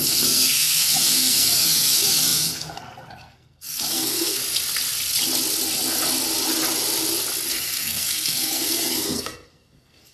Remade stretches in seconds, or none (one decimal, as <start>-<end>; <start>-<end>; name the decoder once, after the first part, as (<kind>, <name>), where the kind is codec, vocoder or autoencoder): 0.0-4.4 (codec, SNAC); 7.5-10.1